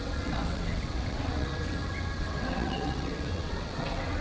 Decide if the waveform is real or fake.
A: fake